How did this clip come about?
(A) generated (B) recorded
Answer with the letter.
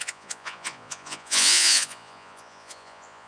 A